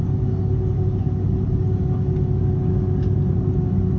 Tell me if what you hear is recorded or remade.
recorded